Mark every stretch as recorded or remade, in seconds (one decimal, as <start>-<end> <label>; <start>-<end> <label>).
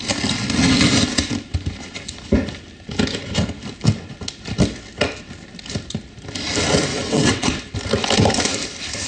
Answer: 0.0-6.9 recorded; 6.9-7.5 remade; 7.5-9.1 recorded